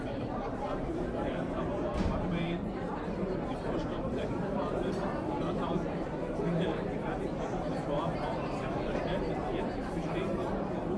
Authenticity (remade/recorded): remade